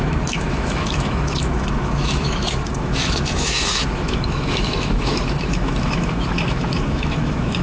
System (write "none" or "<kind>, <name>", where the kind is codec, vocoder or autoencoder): autoencoder, DAC-VAE